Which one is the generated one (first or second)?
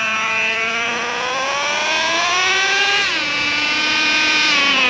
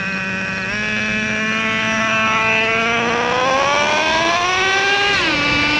first